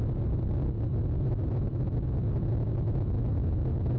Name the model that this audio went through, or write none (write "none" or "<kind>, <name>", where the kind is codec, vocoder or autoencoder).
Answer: none